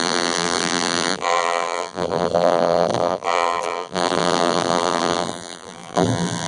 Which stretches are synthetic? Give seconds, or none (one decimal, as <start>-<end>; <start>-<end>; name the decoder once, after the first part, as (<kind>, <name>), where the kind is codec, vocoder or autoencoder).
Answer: 0.0-6.5 (vocoder, BigVGAN v2)